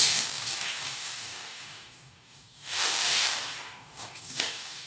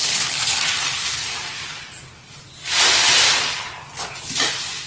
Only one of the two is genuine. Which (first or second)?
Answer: second